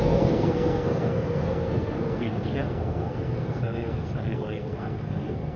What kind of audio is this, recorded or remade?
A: remade